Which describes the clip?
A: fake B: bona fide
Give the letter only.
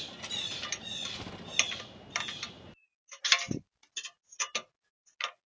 B